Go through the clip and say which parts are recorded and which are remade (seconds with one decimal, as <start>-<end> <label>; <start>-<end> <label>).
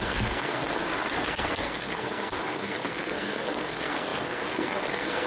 0.0-5.3 remade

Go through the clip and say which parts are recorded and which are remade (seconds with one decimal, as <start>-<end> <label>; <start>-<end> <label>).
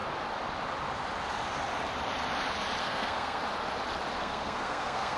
0.0-2.8 recorded; 2.8-3.4 remade; 3.4-4.2 recorded; 4.2-5.2 remade